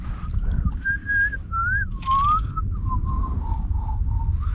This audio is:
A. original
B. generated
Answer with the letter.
A